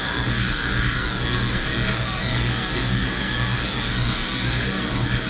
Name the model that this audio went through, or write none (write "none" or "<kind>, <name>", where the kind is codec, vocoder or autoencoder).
codec, SNAC